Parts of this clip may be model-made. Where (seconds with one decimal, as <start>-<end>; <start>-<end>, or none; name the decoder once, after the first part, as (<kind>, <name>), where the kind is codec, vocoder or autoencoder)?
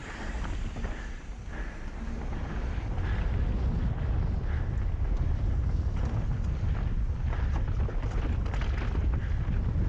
none